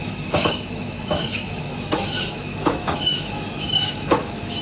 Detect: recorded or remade remade